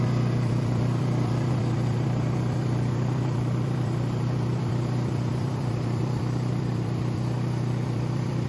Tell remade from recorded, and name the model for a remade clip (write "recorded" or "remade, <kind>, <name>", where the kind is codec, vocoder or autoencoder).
remade, vocoder, BigVGAN v2